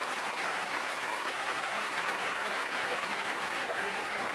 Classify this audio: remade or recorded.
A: remade